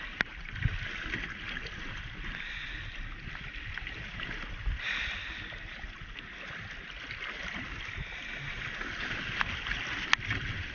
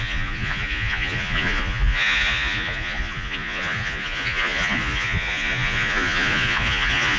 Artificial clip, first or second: second